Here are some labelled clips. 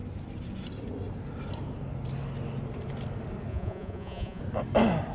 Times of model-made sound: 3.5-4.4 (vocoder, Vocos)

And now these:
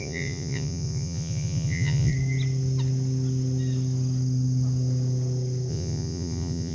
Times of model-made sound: 0.0-2.1 (vocoder, Vocos); 5.7-6.7

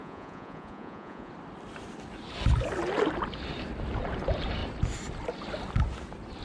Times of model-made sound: 0.0-1.3 (vocoder, Vocos)

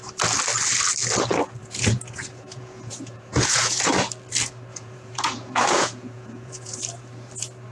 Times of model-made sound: 1.6-3.8 (vocoder, Vocos); 4.7-6.8

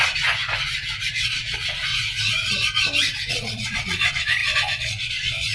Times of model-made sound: 0.0-0.4 (vocoder, Vocos); 1.1-1.9; 3.3-5.5

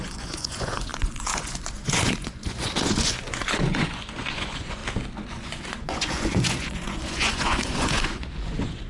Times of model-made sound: 0.0-4.8 (vocoder, Vocos); 5.3-8.9